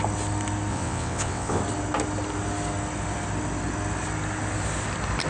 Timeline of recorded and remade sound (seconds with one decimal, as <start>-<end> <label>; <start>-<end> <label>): 0.0-0.7 recorded; 0.7-1.6 remade; 1.6-5.3 recorded